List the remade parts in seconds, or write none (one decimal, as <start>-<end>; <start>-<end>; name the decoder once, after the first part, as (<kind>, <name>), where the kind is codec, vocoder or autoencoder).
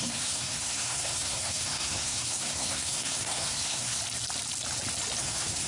0.0-4.0 (codec, SNAC); 5.2-5.7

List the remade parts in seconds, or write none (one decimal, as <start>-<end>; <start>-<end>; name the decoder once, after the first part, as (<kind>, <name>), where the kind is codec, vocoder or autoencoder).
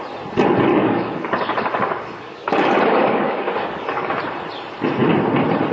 0.7-4.1 (codec, DAC)